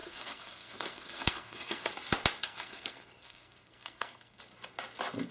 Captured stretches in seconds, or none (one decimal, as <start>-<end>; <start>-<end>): 1.9-2.4; 4.4-5.3